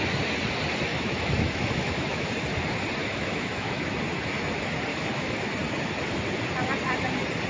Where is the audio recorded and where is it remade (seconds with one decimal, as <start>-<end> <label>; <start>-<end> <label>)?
0.0-0.9 recorded; 0.9-2.3 remade; 2.3-3.0 recorded; 3.0-3.9 remade; 3.9-4.9 recorded; 4.9-5.5 remade; 5.5-7.5 recorded